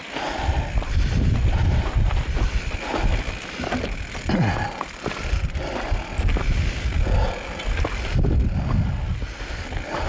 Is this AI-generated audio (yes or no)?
no